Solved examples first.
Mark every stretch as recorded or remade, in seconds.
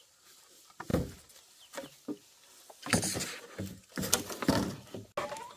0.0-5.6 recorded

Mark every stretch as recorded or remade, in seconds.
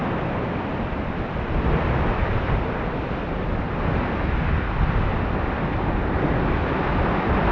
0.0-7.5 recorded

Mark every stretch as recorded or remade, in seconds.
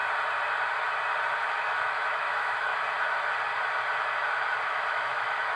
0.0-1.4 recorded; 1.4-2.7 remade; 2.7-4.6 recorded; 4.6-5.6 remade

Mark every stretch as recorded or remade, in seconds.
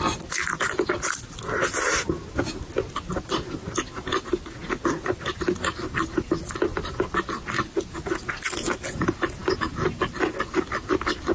0.0-11.3 recorded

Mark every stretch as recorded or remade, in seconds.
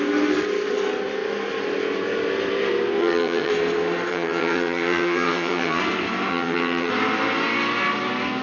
0.0-3.0 recorded; 3.0-3.5 remade; 3.5-4.1 recorded; 4.1-5.8 remade; 5.8-6.3 recorded; 6.3-6.9 remade; 6.9-8.4 recorded